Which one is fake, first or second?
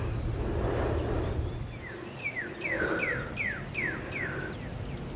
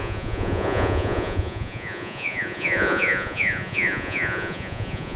second